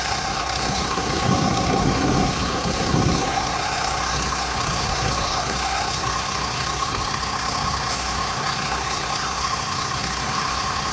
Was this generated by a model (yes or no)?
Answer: yes